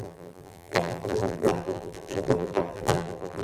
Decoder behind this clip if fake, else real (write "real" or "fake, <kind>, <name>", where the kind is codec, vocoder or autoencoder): fake, vocoder, BigVGAN v2